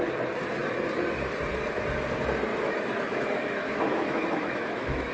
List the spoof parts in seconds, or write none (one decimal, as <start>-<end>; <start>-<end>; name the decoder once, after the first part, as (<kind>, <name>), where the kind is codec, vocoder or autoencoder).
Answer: 2.5-5.1 (autoencoder, DAC-VAE)